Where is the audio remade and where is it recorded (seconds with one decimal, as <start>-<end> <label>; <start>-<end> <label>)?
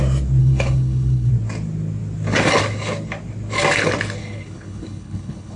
0.0-0.4 recorded; 0.4-1.3 remade; 1.3-4.2 recorded; 4.2-5.6 remade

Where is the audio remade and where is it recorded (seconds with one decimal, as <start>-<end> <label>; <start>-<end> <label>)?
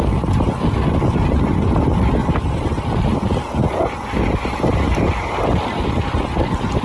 0.0-6.8 recorded